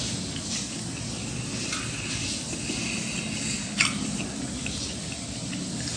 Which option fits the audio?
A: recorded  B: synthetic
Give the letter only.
A